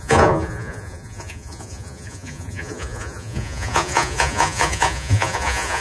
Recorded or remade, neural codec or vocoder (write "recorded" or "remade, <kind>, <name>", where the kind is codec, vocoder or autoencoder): remade, vocoder, Vocos